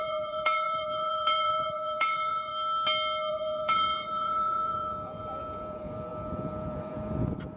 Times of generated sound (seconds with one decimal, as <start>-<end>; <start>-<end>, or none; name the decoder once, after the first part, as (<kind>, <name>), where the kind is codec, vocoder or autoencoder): 0.0-2.5 (vocoder, Vocos); 3.3-7.6